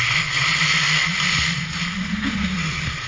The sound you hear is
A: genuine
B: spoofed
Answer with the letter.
A